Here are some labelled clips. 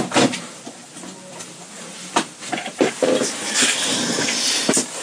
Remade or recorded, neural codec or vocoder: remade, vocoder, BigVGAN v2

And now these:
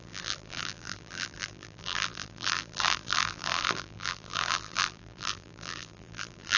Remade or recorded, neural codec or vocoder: remade, vocoder, BigVGAN v2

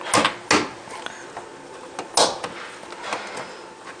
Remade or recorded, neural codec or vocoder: recorded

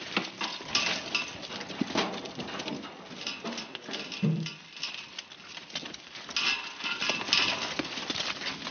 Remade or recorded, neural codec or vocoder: recorded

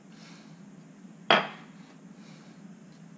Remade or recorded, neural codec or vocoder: recorded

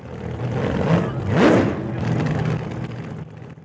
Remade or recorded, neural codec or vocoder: recorded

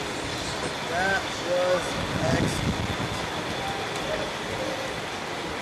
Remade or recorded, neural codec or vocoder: recorded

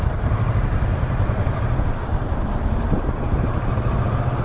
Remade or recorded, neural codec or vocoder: remade, vocoder, BigVGAN v2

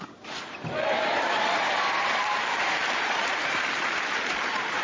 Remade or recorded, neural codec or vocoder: remade, vocoder, BigVGAN v2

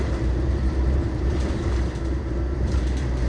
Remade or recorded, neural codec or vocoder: remade, vocoder, BigVGAN v2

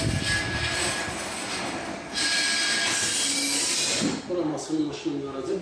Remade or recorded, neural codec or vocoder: recorded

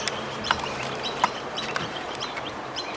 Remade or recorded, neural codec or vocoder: remade, vocoder, BigVGAN v2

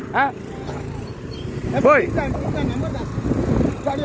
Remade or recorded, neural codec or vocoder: recorded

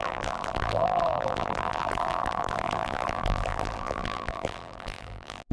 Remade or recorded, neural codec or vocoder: remade, vocoder, BigVGAN v2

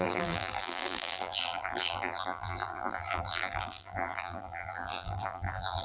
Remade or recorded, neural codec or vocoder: remade, vocoder, BigVGAN v2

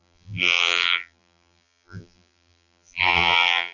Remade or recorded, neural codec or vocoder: remade, vocoder, BigVGAN v2